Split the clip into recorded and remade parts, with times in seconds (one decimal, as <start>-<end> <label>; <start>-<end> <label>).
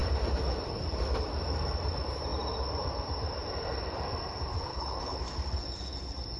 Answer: 0.0-4.7 recorded; 4.7-5.2 remade; 5.2-6.4 recorded